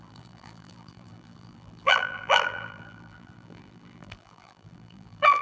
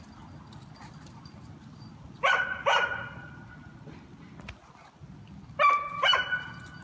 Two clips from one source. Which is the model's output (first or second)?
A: first